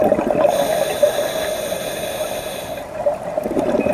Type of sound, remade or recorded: recorded